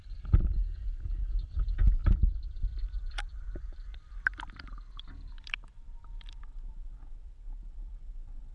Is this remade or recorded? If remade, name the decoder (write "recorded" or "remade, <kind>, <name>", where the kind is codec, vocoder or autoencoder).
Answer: remade, vocoder, BigVGAN v2